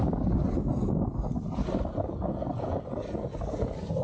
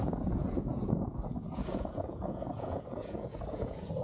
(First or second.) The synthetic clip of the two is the second